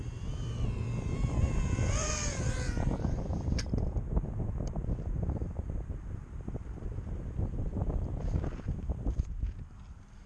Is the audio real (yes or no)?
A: no